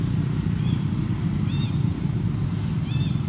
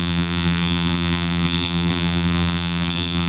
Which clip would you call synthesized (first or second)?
second